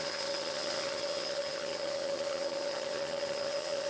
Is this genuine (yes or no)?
no